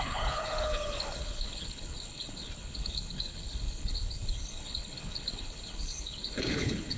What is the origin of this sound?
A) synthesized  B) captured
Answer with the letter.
A